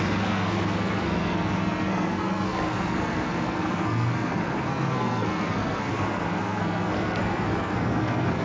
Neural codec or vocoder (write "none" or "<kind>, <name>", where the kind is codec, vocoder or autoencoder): codec, SNAC